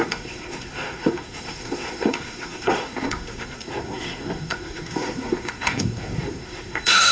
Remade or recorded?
remade